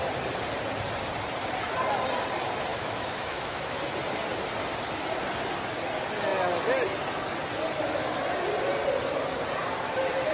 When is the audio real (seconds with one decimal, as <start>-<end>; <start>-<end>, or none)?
0.0-2.7; 3.8-10.3